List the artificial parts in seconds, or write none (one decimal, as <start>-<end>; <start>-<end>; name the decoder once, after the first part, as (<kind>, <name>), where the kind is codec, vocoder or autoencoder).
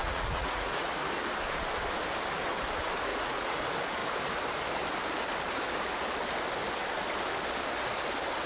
0.0-0.9 (vocoder, Vocos); 3.1-3.6